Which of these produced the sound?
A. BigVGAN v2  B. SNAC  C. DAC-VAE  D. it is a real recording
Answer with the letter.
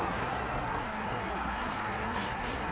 B